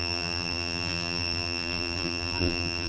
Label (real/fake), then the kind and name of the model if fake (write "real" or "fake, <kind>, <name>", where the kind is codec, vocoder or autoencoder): fake, vocoder, BigVGAN v2